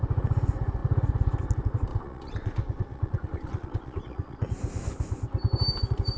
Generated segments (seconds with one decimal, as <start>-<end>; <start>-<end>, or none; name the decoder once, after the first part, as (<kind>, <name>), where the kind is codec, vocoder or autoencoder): 1.9-4.5 (vocoder, Vocos)